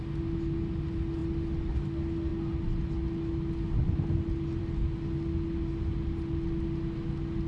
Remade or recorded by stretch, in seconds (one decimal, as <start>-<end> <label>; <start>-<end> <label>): 0.0-7.5 recorded